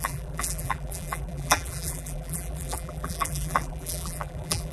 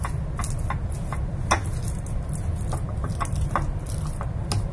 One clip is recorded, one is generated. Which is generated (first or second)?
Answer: first